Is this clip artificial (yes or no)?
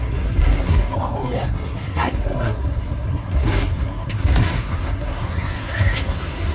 yes